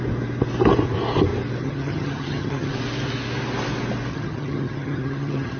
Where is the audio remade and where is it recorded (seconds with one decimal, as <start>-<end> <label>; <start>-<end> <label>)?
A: 0.0-1.6 recorded; 1.6-2.7 remade; 2.7-4.1 recorded; 4.1-5.6 remade